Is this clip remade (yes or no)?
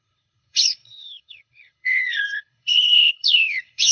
yes